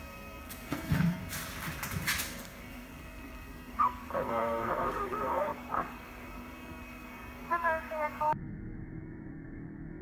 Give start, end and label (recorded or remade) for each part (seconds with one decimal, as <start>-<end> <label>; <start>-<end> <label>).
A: 0.0-1.2 remade; 1.2-2.2 recorded; 2.2-10.0 remade